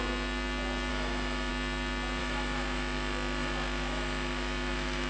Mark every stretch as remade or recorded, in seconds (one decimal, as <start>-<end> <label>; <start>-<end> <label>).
0.0-0.9 recorded; 0.9-1.5 remade; 1.5-2.2 recorded; 2.2-5.1 remade